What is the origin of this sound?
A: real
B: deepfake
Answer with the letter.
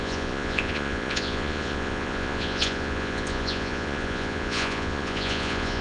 B